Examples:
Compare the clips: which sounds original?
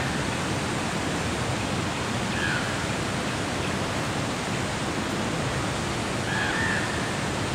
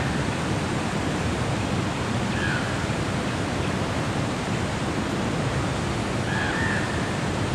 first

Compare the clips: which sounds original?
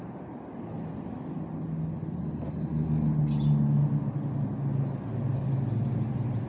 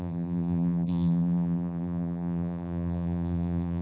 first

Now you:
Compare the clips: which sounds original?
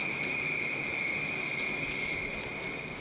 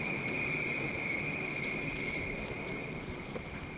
first